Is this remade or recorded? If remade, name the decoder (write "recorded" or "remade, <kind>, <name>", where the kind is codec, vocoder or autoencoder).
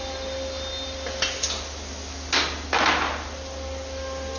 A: recorded